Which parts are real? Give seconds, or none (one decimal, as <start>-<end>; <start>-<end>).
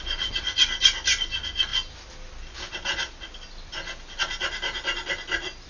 0.0-5.7